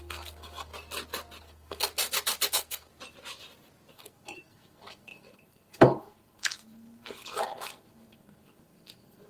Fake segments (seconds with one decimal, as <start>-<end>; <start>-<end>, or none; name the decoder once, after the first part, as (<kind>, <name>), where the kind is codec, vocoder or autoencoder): 0.0-0.7 (codec, SNAC); 1.4-1.9; 2.5-2.9; 3.9-9.3